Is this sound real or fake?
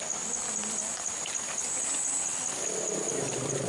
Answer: real